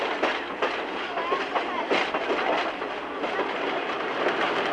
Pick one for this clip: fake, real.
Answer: real